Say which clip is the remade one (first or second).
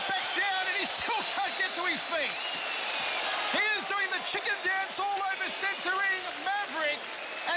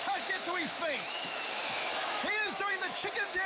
second